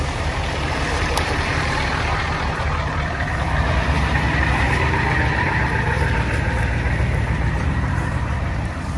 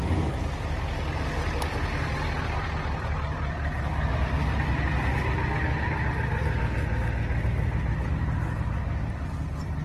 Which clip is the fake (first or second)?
first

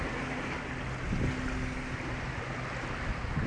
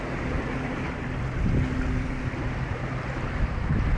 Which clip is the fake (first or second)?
second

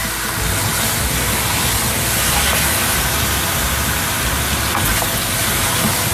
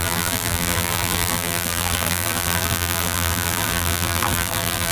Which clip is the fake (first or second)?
second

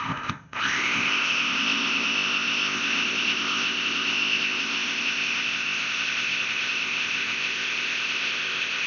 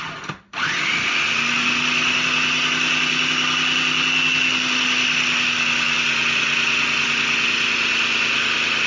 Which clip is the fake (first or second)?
first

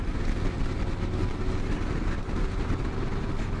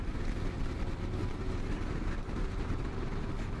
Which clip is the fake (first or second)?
second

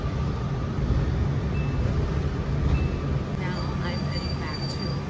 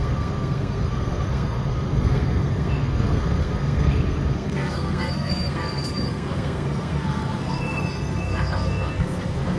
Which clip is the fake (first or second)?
second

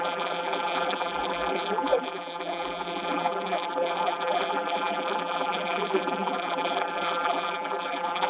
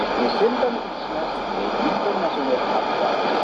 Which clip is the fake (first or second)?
first